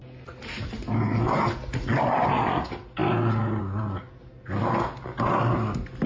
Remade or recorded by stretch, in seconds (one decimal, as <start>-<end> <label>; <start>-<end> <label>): 0.0-6.1 recorded